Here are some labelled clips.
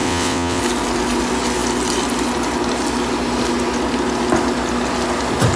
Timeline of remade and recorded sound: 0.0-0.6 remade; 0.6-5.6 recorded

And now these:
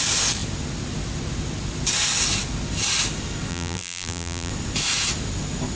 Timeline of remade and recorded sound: 0.0-3.5 recorded; 3.5-4.5 remade; 4.5-5.8 recorded

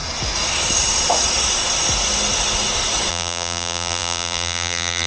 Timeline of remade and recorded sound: 0.0-3.1 recorded; 3.1-5.1 remade

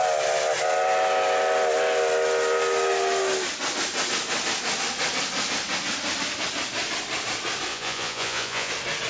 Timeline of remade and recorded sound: 0.0-7.7 recorded; 7.7-8.7 remade; 8.7-9.1 recorded